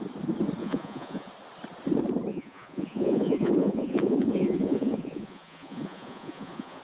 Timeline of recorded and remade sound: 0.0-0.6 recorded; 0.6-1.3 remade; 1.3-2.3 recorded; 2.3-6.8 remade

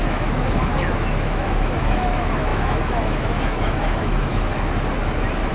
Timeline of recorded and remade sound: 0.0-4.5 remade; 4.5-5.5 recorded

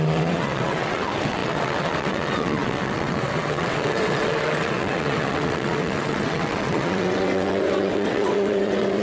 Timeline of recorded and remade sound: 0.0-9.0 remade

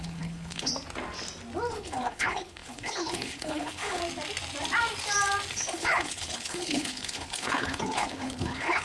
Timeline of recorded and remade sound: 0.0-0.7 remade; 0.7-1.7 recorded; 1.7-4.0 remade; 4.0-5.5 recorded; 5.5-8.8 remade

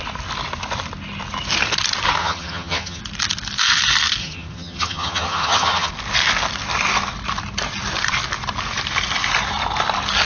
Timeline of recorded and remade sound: 0.0-2.2 recorded; 2.2-3.0 remade; 3.0-4.2 recorded; 4.2-5.9 remade; 5.9-10.2 recorded

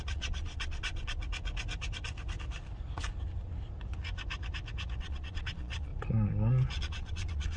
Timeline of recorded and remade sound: 0.0-1.2 remade; 1.2-5.0 recorded; 5.0-5.9 remade; 5.9-6.8 recorded; 6.8-7.6 remade

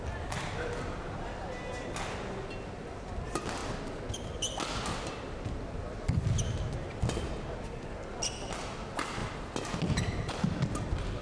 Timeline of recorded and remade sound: 0.0-11.2 recorded

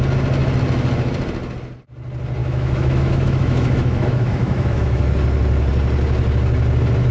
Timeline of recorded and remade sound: 0.0-2.4 recorded; 2.4-5.0 remade; 5.0-7.1 recorded